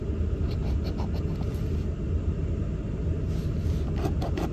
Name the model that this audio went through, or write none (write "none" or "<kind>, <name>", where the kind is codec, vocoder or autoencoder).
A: none